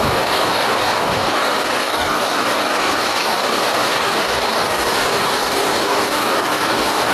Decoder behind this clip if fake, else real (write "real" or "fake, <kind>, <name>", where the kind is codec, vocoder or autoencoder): fake, codec, DAC